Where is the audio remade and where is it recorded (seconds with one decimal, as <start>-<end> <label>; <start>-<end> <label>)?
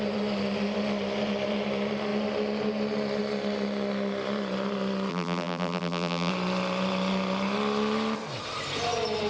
0.0-5.1 recorded; 5.1-6.3 remade; 6.3-9.3 recorded